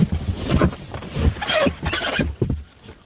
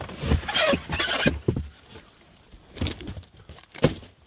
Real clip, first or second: second